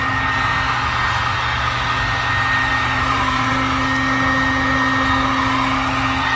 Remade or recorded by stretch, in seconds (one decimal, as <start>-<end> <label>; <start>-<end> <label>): 0.0-2.7 recorded; 2.7-3.5 remade; 3.5-6.4 recorded